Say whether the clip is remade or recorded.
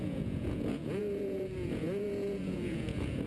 remade